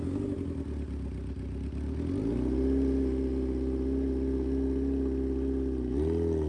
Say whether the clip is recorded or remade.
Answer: recorded